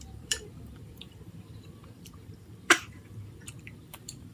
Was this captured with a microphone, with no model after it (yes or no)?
no